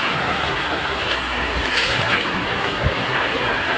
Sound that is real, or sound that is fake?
fake